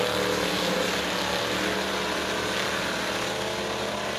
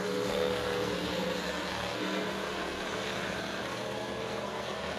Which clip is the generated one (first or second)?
second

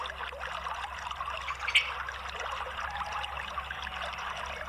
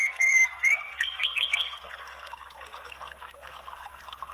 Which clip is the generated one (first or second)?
second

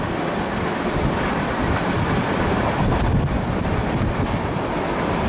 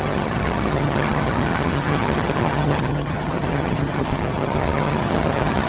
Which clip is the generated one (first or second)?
second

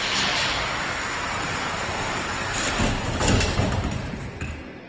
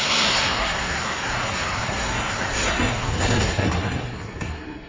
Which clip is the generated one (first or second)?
second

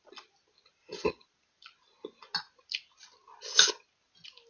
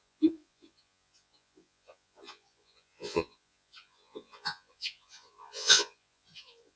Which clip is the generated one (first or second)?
second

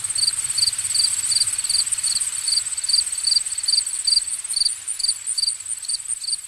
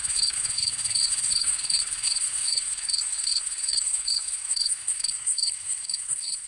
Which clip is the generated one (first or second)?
second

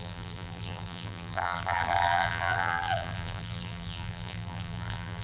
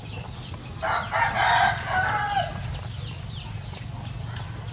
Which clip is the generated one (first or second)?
first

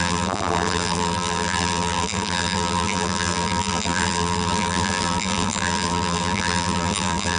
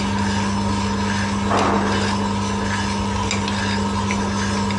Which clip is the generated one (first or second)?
first